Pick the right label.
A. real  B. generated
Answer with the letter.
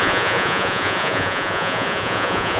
B